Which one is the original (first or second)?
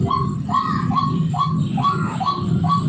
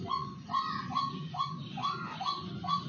first